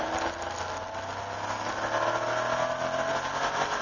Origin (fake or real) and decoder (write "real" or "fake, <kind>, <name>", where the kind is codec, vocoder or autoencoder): real